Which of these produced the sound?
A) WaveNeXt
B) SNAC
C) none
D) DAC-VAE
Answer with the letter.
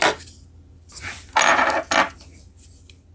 C